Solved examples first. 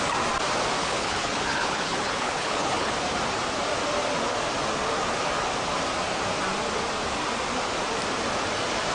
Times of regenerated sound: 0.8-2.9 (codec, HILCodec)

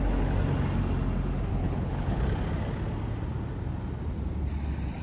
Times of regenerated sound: 1.5-2.2 (codec, HILCodec)

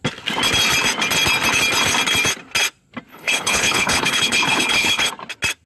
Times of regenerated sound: 3.1-5.1 (codec, HILCodec)

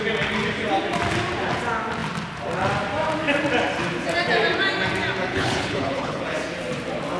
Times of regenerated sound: 5.3-6.2 (codec, HILCodec)

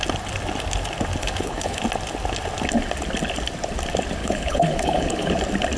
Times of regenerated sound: 1.2-1.8 (codec, HILCodec); 4.2-5.3